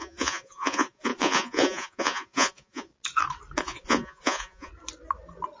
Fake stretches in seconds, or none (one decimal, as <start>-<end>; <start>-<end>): 0.0-2.9; 3.6-4.7